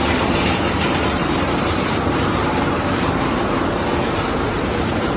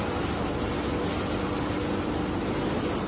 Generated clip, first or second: first